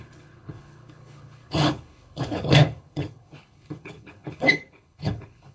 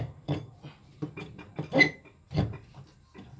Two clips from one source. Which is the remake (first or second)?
first